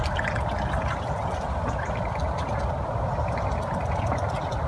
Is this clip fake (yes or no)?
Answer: no